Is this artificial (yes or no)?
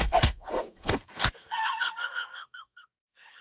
yes